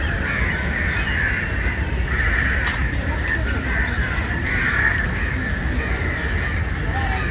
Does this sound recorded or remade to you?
recorded